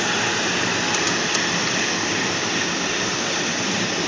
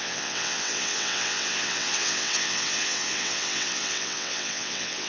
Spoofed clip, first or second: second